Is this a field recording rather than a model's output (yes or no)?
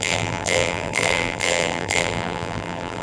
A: no